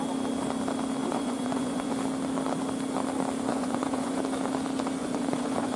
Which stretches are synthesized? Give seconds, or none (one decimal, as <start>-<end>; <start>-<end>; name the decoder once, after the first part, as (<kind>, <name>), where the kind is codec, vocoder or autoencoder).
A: 1.0-1.9 (vocoder, Vocos); 3.5-4.2; 5.0-5.8